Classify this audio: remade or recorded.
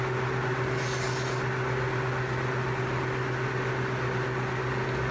recorded